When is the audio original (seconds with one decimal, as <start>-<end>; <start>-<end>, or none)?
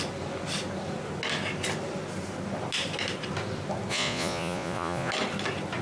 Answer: 0.0-3.9; 5.1-5.8